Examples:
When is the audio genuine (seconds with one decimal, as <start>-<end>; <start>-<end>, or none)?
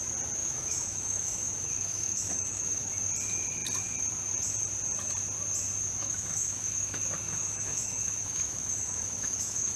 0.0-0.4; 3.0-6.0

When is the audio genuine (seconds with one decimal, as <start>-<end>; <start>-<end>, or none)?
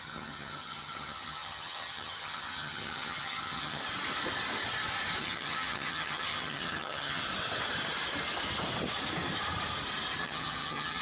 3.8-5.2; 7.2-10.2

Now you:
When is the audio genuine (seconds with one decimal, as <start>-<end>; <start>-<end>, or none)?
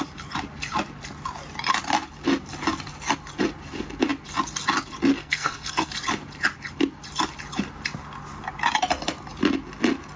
0.0-5.2; 5.9-10.2